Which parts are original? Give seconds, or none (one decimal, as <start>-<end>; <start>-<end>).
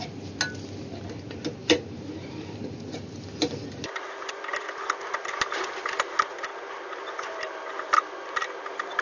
0.0-1.6; 4.3-9.0